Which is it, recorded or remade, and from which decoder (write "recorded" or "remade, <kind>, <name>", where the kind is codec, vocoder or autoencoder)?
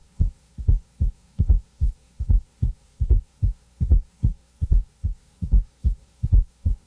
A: remade, codec, SNAC